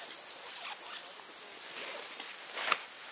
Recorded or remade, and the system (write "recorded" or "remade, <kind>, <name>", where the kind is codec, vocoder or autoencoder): recorded